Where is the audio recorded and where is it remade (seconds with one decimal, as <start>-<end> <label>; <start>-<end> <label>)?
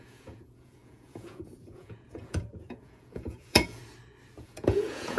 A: 0.0-3.8 remade; 3.8-4.4 recorded; 4.4-5.2 remade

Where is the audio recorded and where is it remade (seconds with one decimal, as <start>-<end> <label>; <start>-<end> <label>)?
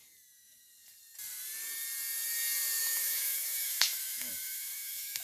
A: 0.0-2.8 recorded; 2.8-5.2 remade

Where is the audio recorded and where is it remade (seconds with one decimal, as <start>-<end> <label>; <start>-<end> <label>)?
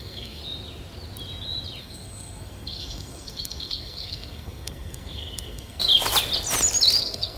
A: 0.0-0.4 remade; 0.4-1.8 recorded; 1.8-5.9 remade; 5.9-7.0 recorded; 7.0-7.4 remade